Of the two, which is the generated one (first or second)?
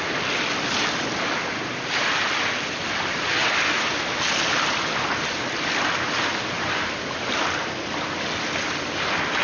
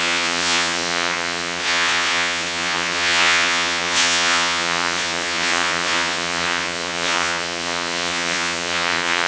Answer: second